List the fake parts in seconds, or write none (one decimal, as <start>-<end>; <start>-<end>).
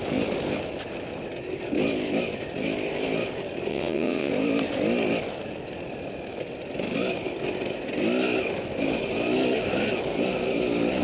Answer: 3.7-4.3